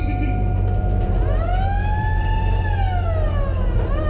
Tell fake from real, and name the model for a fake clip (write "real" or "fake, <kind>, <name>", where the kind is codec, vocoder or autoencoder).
real